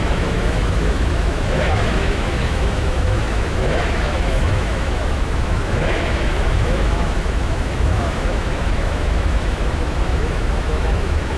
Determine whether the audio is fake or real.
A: fake